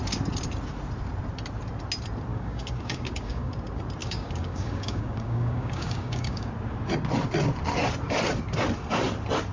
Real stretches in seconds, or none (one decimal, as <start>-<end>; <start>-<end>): 0.0-2.3; 3.5-4.0; 6.5-9.5